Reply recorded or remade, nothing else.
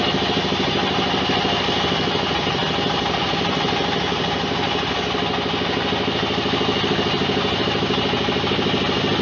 recorded